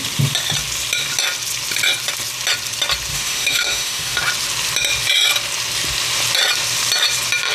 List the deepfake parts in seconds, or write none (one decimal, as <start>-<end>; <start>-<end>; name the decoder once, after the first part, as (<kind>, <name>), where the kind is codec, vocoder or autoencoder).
3.1-4.2 (autoencoder, DAC-VAE)